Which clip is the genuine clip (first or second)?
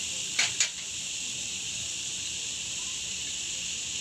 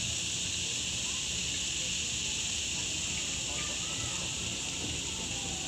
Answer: second